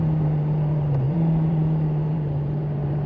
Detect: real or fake fake